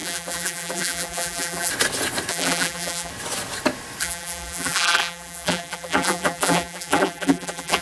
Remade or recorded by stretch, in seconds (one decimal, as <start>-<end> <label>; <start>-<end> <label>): 0.0-1.7 remade; 1.7-2.3 recorded; 2.3-3.1 remade; 3.1-4.0 recorded; 4.0-7.8 remade